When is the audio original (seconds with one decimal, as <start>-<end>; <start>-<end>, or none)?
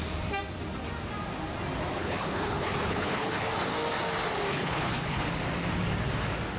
0.0-2.0; 3.5-4.5; 5.2-6.6